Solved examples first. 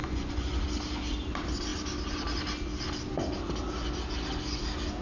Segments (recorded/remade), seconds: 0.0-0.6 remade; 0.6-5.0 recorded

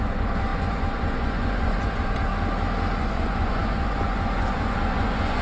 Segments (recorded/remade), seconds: 0.0-2.3 remade; 2.3-3.0 recorded; 3.0-5.4 remade